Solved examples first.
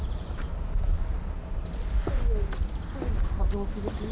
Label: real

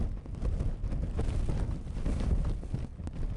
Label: real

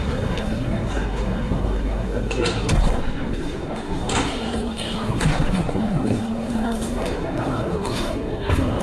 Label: fake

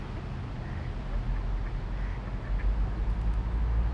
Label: real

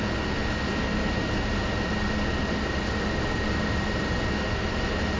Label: real